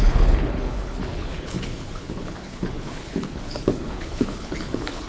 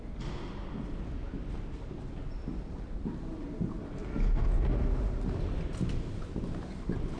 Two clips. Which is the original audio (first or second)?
second